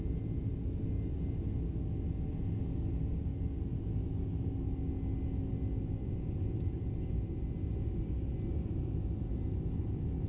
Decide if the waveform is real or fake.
real